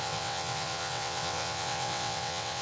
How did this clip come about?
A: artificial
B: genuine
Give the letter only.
A